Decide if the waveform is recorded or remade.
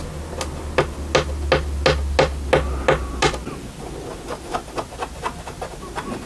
recorded